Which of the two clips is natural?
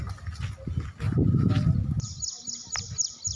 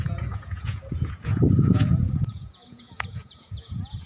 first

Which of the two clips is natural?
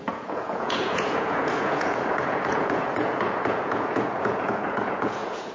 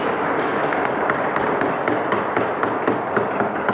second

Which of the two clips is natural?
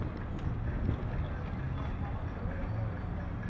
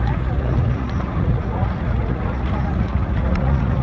first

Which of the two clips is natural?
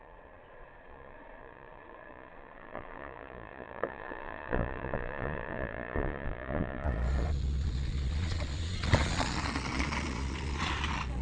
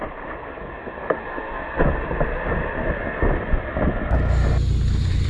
second